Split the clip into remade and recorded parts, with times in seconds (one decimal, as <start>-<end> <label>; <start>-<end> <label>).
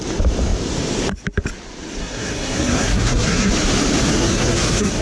0.0-2.0 recorded; 2.0-3.5 remade; 3.5-4.1 recorded; 4.1-5.0 remade